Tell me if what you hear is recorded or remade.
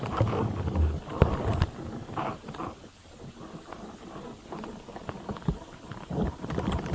recorded